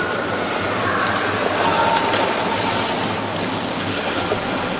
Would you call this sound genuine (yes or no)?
yes